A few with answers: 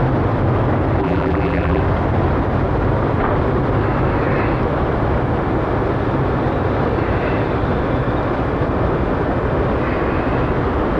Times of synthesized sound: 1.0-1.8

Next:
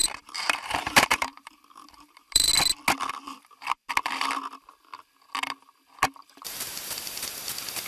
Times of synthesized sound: 0.0-2.5; 3.2-3.9; 6.2-7.0

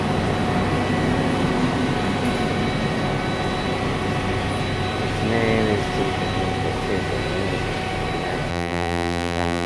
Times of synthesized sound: 8.5-9.7